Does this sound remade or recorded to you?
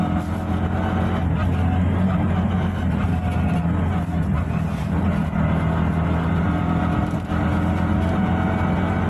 recorded